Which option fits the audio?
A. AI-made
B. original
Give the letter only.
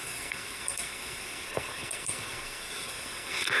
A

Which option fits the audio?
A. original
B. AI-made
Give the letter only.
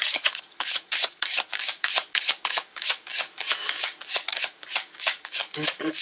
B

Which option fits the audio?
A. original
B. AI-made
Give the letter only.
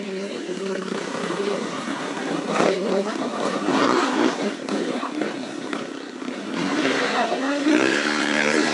B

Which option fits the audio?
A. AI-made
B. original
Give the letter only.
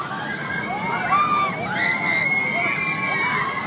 B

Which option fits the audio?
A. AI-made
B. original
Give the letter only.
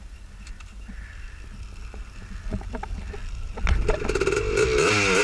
B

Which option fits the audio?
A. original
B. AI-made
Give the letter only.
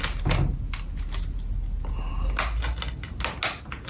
A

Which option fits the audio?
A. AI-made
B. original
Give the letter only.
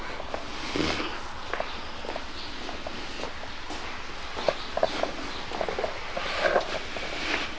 B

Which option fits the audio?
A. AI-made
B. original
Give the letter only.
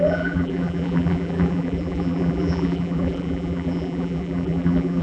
A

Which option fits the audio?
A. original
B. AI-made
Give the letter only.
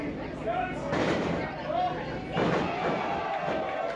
A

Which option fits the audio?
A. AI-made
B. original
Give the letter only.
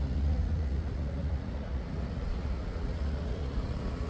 A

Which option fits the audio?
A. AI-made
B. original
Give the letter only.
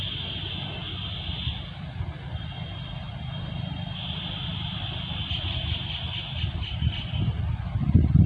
A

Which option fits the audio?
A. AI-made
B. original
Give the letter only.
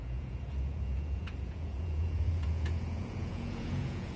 A